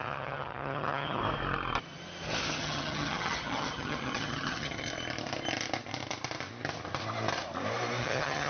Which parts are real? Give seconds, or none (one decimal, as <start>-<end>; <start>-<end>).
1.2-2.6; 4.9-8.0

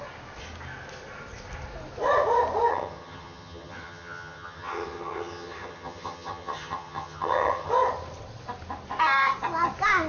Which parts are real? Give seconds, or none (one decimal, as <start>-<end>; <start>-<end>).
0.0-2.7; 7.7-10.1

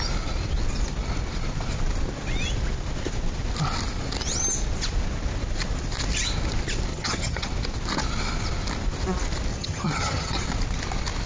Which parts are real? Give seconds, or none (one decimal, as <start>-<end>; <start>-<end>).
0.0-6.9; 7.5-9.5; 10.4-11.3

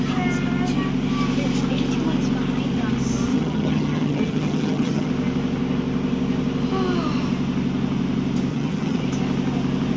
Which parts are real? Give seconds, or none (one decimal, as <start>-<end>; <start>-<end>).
0.0-3.3; 5.1-8.5; 9.0-10.0

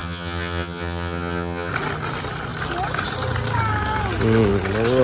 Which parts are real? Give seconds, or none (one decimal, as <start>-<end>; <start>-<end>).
1.7-5.0

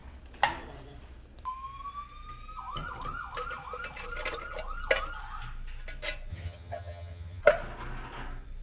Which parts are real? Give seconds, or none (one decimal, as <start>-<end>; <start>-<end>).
0.0-6.3; 7.4-8.6